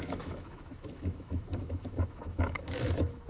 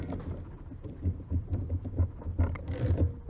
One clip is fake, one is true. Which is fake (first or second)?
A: first